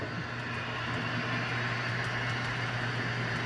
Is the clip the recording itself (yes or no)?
yes